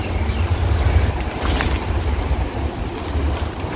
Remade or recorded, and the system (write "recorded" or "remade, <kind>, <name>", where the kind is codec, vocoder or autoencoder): recorded